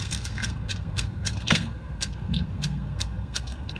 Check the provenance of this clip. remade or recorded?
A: remade